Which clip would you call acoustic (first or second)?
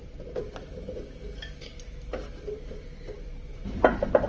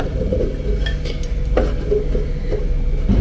second